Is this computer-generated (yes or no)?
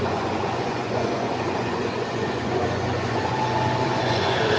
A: yes